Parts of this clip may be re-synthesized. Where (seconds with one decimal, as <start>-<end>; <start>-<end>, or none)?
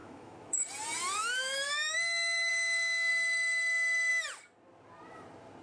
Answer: 0.0-0.6; 1.2-2.5; 3.1-4.1